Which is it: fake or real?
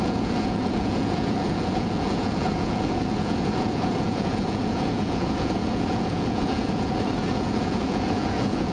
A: fake